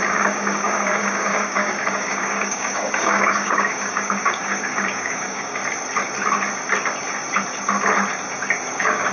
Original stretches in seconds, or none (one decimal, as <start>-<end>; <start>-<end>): 5.6-8.7